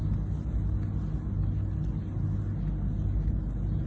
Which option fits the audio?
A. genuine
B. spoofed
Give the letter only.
A